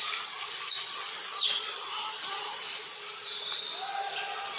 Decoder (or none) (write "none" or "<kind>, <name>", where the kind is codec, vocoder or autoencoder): none